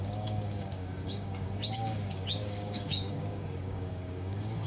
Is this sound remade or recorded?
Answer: remade